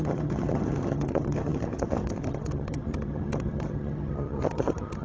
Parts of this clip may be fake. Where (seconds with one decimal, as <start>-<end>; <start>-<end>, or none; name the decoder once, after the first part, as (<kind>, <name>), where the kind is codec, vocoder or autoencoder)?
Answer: 0.0-5.0 (vocoder, HiFi-GAN)